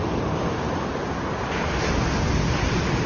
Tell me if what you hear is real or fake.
real